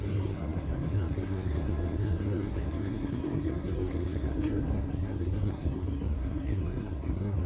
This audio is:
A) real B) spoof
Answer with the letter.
B